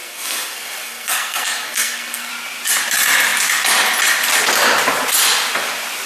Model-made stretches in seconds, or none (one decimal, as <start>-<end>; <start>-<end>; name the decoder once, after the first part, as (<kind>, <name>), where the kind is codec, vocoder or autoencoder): 0.0-2.3 (codec, SNAC)